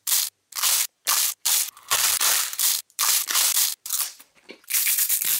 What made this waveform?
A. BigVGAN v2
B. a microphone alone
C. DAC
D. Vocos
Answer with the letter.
A